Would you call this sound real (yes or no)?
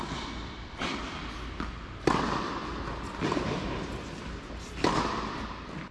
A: yes